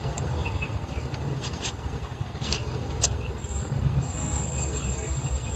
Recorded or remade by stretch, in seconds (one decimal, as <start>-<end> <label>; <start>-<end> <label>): 0.0-5.6 remade